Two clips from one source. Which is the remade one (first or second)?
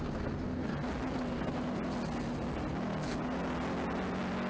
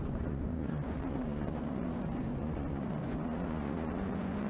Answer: second